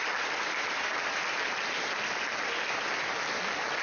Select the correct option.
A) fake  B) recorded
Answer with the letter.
B